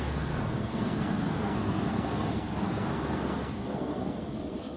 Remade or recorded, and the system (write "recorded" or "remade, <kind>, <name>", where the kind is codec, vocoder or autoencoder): remade, codec, SNAC